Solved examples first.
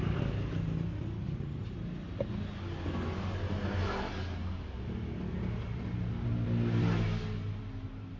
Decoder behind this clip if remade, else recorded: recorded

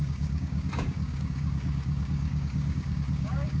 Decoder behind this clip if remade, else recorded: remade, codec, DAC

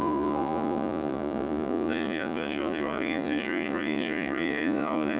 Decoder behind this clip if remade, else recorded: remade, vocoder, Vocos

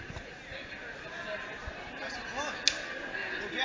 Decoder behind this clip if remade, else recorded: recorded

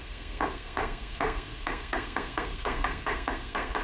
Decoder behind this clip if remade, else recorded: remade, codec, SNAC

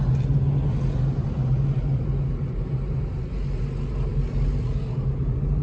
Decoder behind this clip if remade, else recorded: recorded